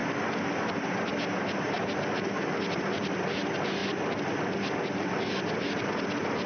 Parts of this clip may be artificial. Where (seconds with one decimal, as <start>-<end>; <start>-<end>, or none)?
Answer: none